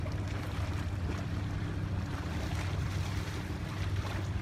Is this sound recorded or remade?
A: remade